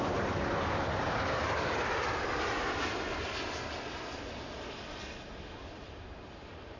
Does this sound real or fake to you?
real